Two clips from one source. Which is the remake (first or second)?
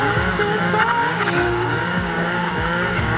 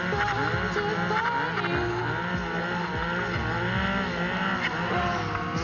first